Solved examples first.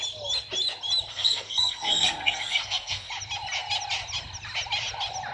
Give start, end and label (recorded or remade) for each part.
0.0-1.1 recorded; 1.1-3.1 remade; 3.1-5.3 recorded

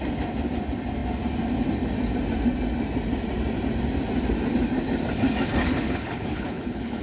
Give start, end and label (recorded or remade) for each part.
0.0-5.6 recorded; 5.6-7.0 remade

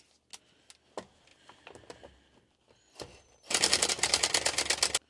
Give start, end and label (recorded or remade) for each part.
0.0-5.1 recorded

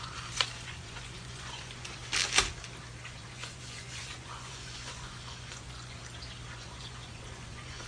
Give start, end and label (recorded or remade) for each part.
0.0-2.0 remade; 2.0-3.1 recorded; 3.1-6.0 remade; 6.0-6.5 recorded; 6.5-7.9 remade